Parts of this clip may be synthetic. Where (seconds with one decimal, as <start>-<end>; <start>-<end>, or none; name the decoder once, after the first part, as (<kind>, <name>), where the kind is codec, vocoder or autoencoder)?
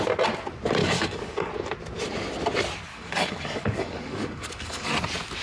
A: 0.8-1.5 (codec, DAC); 2.9-4.9